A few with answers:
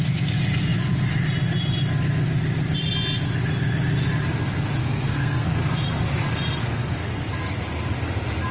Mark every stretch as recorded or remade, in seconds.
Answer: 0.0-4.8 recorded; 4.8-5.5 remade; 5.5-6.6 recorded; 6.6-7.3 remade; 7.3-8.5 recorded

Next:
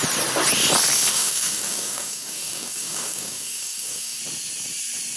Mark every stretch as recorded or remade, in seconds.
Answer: 0.0-1.1 recorded; 1.1-4.2 remade; 4.2-5.2 recorded

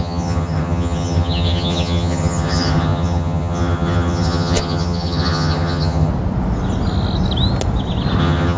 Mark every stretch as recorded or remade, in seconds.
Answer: 0.0-6.1 remade; 6.1-8.2 recorded; 8.2-8.6 remade

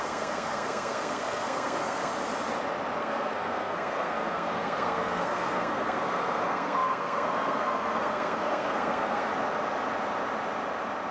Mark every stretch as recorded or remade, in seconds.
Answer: 0.0-2.1 remade; 2.1-3.0 recorded; 3.0-9.3 remade; 9.3-11.1 recorded

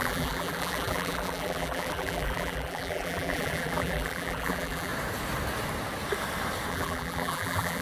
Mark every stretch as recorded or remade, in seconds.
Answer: 0.0-4.9 remade; 4.9-6.7 recorded; 6.7-7.8 remade

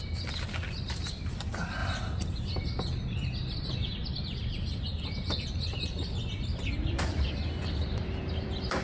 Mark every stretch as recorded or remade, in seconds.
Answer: 0.0-8.8 remade